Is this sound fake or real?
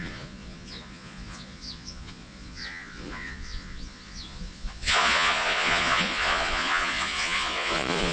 fake